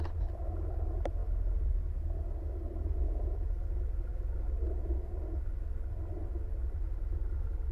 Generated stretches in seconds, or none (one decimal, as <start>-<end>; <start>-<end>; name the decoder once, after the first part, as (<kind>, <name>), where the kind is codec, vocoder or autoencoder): none